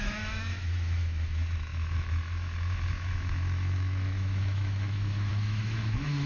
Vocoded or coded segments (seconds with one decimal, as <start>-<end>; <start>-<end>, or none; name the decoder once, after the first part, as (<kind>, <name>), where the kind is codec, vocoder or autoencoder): 0.0-6.3 (autoencoder, DAC-VAE)